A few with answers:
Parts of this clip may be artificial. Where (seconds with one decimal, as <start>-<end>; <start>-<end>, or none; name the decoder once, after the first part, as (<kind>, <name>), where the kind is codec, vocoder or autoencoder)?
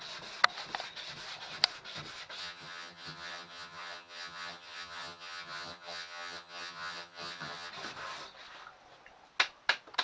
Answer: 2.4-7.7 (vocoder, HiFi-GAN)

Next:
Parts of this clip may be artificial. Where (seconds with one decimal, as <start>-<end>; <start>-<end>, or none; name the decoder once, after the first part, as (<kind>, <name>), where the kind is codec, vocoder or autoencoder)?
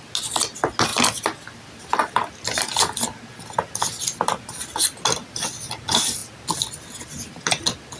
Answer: none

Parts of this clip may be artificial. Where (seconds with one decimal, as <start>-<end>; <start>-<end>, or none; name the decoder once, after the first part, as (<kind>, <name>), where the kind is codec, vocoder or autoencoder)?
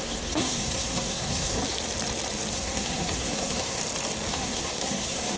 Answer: 0.0-1.6 (codec, SNAC); 2.5-3.8; 4.3-5.4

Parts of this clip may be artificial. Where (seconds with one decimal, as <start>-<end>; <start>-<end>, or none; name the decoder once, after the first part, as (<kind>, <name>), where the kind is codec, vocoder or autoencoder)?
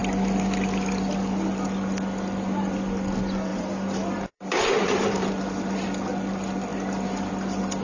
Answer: 3.5-5.3 (vocoder, BigVGAN v2)